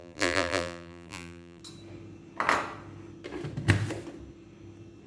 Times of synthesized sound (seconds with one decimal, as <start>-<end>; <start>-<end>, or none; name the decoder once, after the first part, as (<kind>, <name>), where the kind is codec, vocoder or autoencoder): 0.0-1.6 (vocoder, BigVGAN v2)